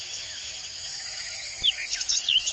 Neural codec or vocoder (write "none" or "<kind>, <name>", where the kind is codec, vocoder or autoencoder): autoencoder, DAC-VAE